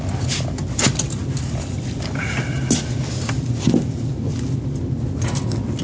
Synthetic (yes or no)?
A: no